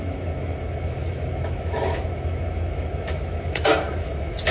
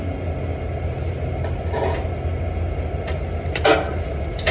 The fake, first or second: first